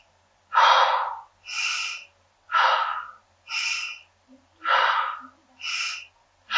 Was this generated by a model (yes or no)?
no